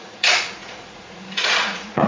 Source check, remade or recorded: remade